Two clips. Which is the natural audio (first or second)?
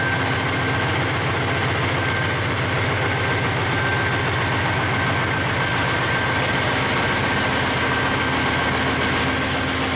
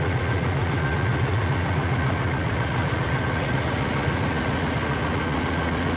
first